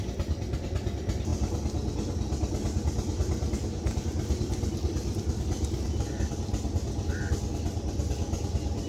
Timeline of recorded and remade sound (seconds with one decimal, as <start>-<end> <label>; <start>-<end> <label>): 0.0-8.9 recorded